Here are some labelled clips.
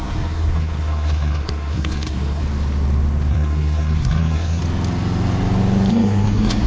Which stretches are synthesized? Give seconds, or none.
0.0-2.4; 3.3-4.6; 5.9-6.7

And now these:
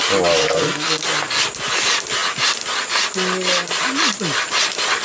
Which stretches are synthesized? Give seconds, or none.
0.4-1.0